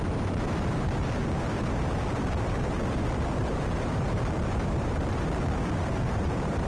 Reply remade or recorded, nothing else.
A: remade